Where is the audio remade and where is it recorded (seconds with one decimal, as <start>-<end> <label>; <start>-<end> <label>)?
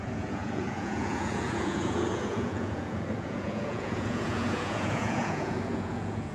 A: 0.0-6.3 remade